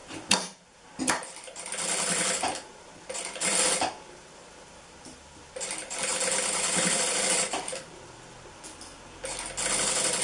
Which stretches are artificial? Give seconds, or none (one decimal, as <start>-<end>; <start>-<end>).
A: 0.0-1.0; 6.1-8.2